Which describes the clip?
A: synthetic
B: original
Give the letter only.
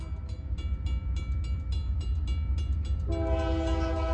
B